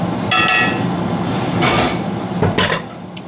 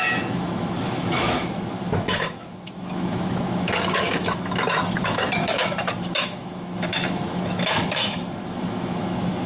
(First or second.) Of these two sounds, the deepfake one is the second